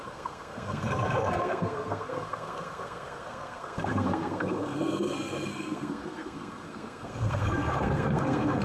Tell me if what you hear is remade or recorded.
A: remade